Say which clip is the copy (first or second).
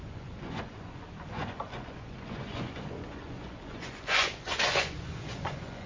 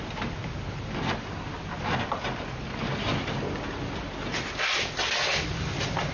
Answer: first